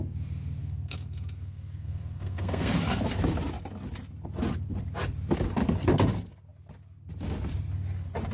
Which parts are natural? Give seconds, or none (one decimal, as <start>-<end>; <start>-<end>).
0.0-0.6; 2.7-8.3